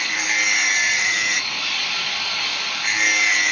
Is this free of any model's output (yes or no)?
no